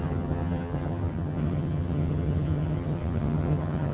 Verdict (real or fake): fake